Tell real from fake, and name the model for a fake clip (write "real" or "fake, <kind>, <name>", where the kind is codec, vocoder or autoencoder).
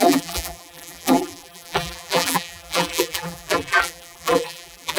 fake, vocoder, BigVGAN v2